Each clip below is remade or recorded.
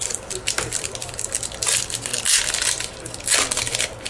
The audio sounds recorded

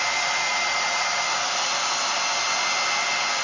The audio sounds recorded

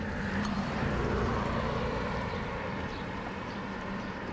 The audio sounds remade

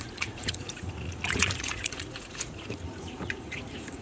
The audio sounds remade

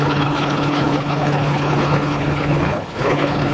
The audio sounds remade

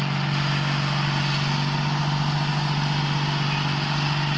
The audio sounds recorded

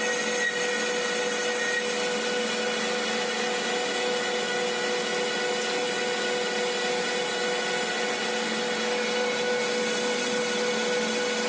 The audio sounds recorded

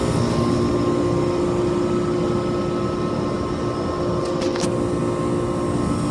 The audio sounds recorded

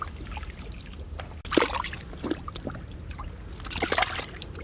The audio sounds recorded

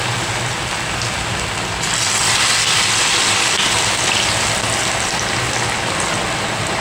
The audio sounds recorded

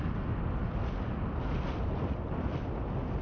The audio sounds recorded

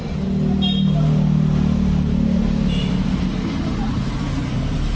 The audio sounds recorded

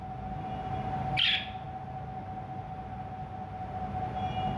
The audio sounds recorded